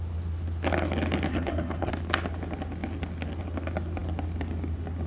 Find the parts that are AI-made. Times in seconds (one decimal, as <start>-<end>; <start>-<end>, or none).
1.3-1.9

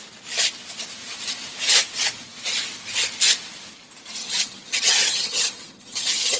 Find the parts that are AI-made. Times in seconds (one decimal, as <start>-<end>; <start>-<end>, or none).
4.2-6.4

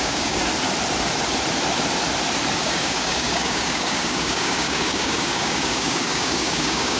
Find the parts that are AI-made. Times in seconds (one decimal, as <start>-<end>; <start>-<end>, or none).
0.0-0.4; 2.6-7.0

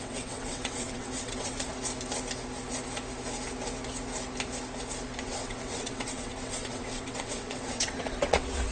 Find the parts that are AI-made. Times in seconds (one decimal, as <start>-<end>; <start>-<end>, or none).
0.0-1.7; 5.2-8.7

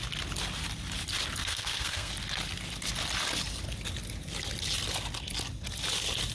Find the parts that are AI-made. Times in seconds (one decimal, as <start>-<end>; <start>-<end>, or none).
1.4-2.1